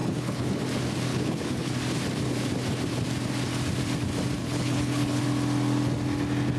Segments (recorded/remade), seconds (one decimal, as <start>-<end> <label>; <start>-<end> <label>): 0.0-0.6 remade; 0.6-1.1 recorded; 1.1-1.7 remade; 1.7-4.4 recorded; 4.4-5.2 remade; 5.2-6.6 recorded